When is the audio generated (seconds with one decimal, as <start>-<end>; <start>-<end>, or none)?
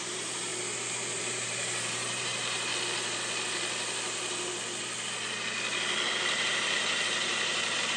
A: 0.0-0.5; 1.2-2.7; 6.1-8.0